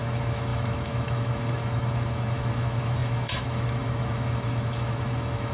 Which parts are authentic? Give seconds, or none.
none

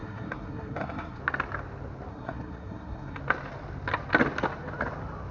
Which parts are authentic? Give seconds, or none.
1.2-2.1; 3.2-5.3